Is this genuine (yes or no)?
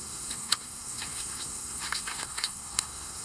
no